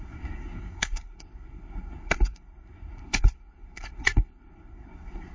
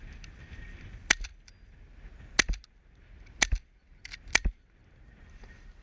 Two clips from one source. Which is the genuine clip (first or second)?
second